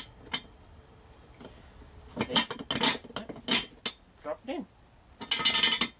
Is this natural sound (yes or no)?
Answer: yes